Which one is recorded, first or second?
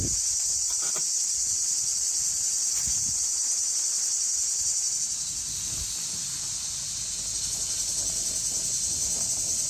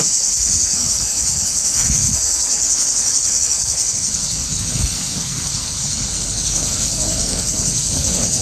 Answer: first